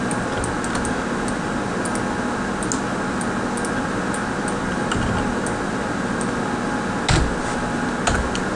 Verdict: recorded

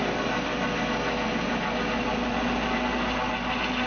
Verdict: recorded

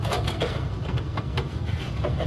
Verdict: remade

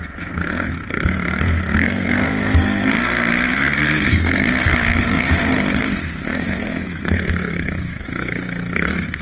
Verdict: remade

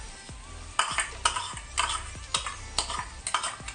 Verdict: recorded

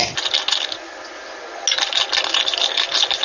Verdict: recorded